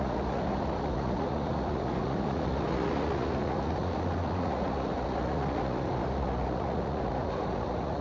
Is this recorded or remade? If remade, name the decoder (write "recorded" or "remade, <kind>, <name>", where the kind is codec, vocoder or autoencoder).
remade, vocoder, Vocos